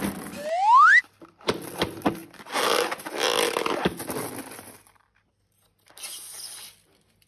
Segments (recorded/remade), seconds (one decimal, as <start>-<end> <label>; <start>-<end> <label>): 0.0-7.3 recorded